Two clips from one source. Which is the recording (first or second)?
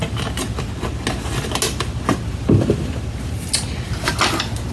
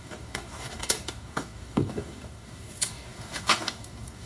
first